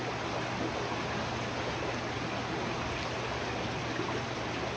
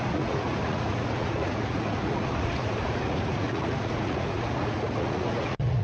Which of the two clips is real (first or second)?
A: first